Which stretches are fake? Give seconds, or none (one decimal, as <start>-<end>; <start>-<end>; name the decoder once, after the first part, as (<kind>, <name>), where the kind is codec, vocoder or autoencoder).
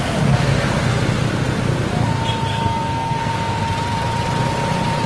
2.5-3.6 (codec, SNAC)